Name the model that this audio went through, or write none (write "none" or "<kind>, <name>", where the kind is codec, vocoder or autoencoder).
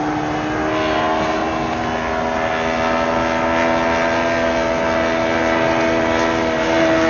none